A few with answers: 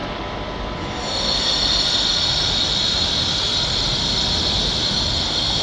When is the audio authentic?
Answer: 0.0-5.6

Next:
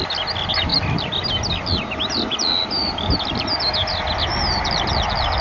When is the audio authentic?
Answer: 0.0-5.4

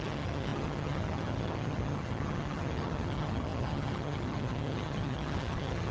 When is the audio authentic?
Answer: none

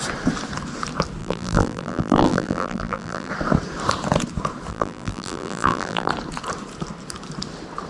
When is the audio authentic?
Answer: 0.0-1.2; 3.3-4.7; 6.1-7.9